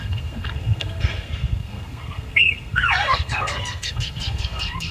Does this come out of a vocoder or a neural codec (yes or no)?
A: yes